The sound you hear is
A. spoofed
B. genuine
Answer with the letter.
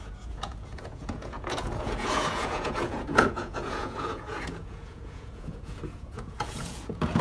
A